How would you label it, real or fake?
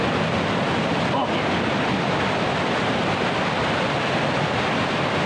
real